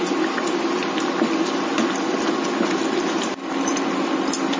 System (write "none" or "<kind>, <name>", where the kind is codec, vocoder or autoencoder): none